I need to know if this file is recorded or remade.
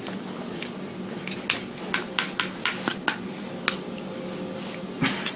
recorded